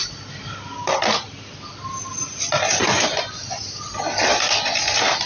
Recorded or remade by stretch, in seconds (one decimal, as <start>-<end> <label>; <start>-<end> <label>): 0.0-2.7 recorded; 2.7-3.6 remade; 3.6-5.3 recorded

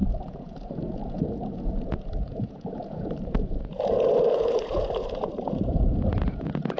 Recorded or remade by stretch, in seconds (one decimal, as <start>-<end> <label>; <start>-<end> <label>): 0.0-6.8 remade

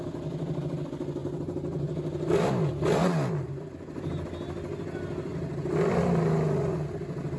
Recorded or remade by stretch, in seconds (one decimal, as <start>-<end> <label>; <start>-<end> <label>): 0.0-7.4 recorded

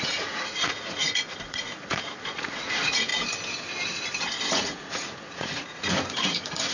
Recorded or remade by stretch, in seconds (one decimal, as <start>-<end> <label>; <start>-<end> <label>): 0.0-3.1 remade; 3.1-4.5 recorded; 4.5-6.7 remade

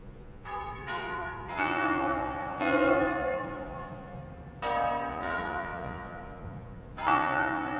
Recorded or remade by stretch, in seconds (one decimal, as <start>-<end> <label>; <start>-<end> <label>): 0.0-4.2 remade; 4.2-5.1 recorded; 5.1-7.8 remade